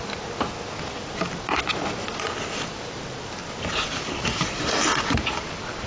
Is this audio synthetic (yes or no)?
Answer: no